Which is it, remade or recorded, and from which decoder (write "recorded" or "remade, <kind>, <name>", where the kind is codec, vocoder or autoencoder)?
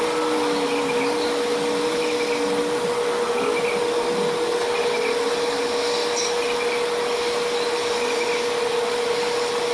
recorded